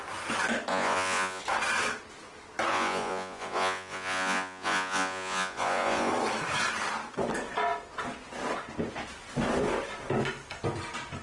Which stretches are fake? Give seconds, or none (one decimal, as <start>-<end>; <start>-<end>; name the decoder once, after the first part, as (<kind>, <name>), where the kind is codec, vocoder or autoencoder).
0.7-1.4 (vocoder, Vocos); 2.7-6.1